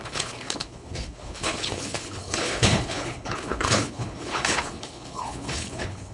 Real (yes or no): no